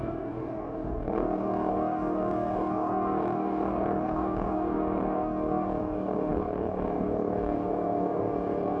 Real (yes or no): no